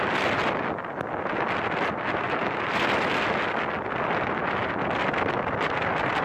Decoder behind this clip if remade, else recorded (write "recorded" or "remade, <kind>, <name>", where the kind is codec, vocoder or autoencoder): recorded